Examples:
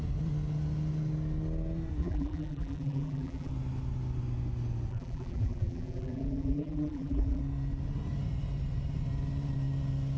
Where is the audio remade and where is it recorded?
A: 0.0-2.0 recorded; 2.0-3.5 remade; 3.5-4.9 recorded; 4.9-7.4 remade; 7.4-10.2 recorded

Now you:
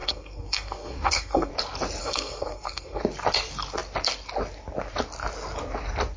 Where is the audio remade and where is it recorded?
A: 0.0-1.5 remade; 1.5-2.0 recorded; 2.0-3.0 remade; 3.0-6.2 recorded